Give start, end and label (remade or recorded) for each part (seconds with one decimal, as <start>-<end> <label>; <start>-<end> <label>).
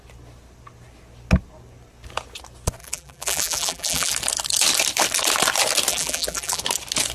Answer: 0.0-2.8 recorded; 2.8-4.1 remade; 4.1-5.9 recorded; 5.9-6.6 remade; 6.6-7.1 recorded